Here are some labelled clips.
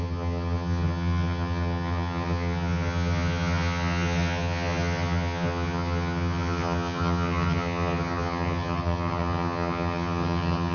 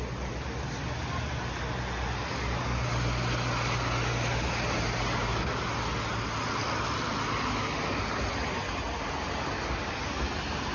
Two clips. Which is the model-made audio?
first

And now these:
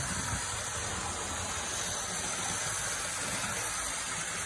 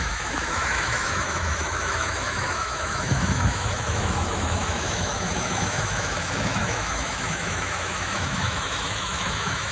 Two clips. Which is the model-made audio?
second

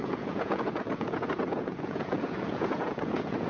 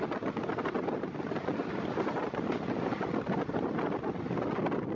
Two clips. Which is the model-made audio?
first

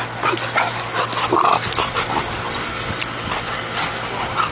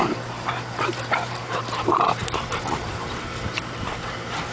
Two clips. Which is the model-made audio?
second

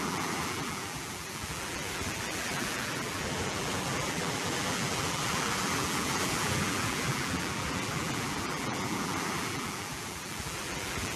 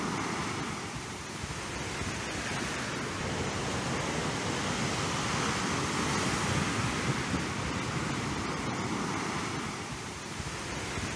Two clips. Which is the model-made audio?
first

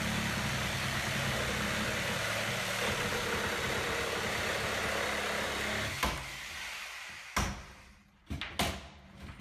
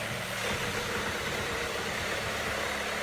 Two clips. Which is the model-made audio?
second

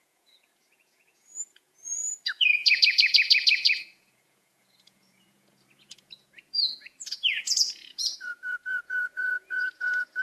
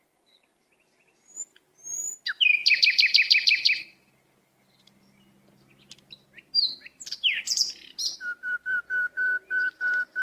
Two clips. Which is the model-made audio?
first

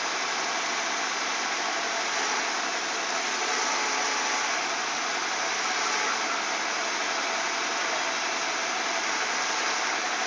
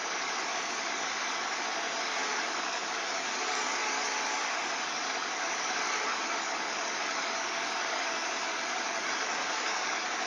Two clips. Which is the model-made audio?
second